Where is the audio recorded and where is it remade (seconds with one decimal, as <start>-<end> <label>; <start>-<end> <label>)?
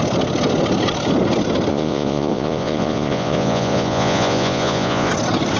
0.0-1.7 recorded; 1.7-5.1 remade; 5.1-5.6 recorded